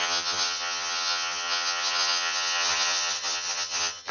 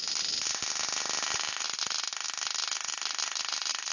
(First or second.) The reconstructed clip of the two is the first